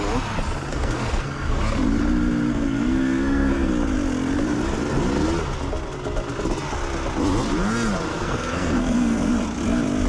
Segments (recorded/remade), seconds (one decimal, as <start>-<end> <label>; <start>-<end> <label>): 0.0-0.7 recorded; 0.7-1.6 remade; 1.6-2.5 recorded; 2.5-3.7 remade; 3.7-8.1 recorded; 8.1-9.3 remade; 9.3-10.1 recorded